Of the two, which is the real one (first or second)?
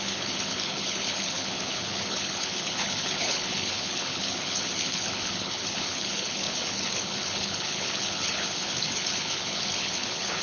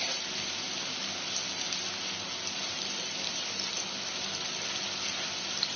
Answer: second